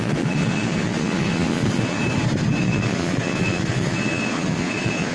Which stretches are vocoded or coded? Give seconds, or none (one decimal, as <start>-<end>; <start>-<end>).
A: 0.0-2.0; 2.6-5.1